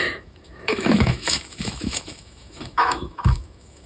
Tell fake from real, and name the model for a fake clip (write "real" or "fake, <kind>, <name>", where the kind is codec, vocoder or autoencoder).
fake, autoencoder, DAC-VAE